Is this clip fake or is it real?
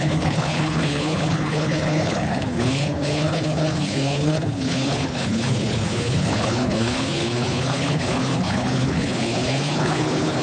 fake